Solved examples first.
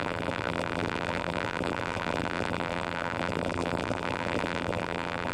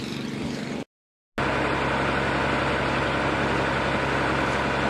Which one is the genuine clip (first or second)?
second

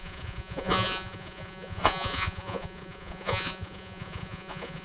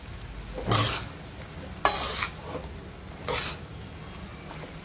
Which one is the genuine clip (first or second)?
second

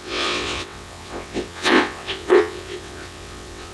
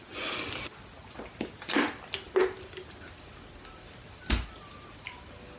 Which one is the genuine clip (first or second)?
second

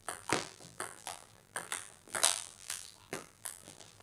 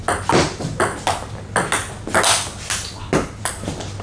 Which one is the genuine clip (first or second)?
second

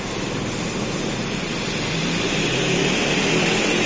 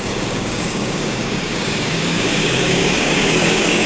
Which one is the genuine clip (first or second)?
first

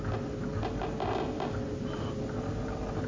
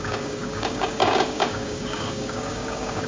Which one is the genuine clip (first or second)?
first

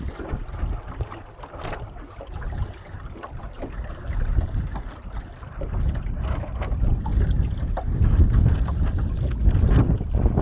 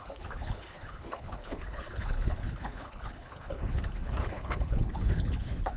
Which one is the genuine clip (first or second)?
first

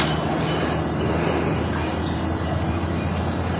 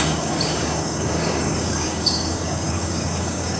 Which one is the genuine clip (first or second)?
first